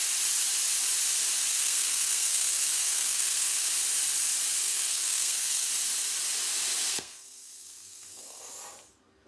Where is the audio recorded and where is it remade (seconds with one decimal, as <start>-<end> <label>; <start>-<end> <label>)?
0.0-1.5 recorded; 1.5-3.7 remade; 3.7-4.6 recorded; 4.6-5.7 remade; 5.7-6.9 recorded; 6.9-8.5 remade; 8.5-9.3 recorded